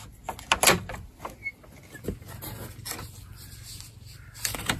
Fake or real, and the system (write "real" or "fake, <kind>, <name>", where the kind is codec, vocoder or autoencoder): real